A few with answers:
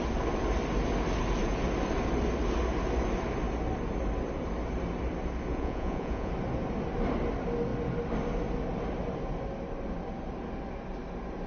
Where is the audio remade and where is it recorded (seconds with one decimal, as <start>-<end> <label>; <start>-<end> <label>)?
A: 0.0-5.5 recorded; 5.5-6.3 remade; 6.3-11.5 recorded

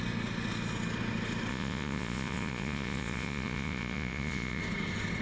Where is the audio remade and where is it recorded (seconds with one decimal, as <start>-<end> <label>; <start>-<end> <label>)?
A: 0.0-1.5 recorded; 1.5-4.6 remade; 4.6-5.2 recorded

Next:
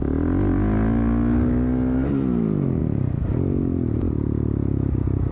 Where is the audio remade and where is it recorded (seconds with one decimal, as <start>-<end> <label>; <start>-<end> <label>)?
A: 0.0-5.3 recorded

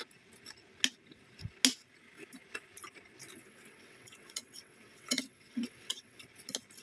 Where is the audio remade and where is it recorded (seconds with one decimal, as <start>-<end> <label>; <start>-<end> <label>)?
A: 0.0-3.4 recorded; 3.4-6.2 remade; 6.2-6.8 recorded